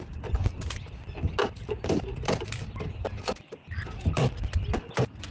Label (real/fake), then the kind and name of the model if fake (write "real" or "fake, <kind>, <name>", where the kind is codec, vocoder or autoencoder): real